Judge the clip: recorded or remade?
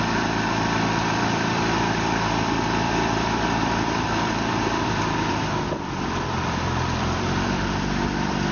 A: remade